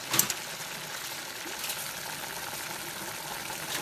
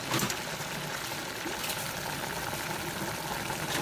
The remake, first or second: second